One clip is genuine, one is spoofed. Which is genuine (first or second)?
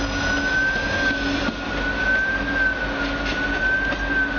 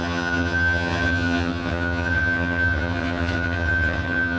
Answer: first